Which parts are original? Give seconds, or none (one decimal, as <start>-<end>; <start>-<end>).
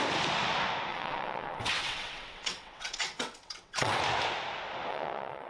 0.0-0.9; 4.0-4.9